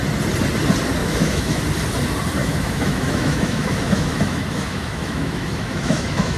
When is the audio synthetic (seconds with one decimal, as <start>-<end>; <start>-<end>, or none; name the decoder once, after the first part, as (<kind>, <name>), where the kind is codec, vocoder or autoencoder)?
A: 1.0-1.6 (autoencoder, DAC-VAE); 2.4-6.4